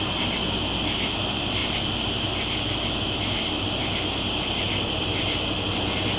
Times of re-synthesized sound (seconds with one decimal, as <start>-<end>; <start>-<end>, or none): none